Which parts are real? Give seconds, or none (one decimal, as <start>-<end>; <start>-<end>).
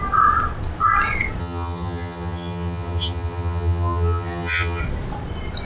0.0-1.4; 4.8-5.6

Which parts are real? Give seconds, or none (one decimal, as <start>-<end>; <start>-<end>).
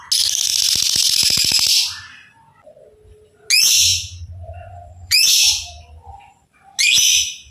0.0-3.9; 6.8-7.5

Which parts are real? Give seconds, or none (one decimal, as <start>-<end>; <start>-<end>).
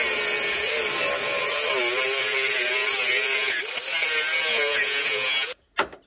0.0-4.5; 5.6-6.1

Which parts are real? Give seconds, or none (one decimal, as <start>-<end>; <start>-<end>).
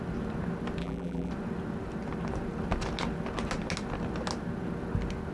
0.0-0.8; 1.3-5.3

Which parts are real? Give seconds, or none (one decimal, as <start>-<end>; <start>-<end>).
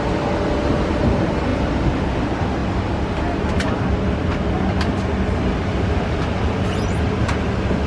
0.0-7.9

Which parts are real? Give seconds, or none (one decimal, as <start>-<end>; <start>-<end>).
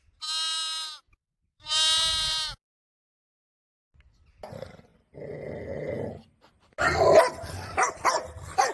0.0-8.7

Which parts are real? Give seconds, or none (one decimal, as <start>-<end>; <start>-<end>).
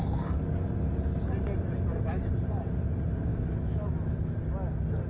0.0-3.3; 4.3-5.1